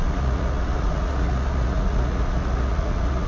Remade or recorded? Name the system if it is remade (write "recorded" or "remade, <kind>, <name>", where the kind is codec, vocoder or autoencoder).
remade, vocoder, Vocos